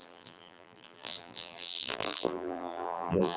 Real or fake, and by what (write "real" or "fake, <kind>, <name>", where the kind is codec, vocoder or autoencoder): fake, vocoder, BigVGAN v2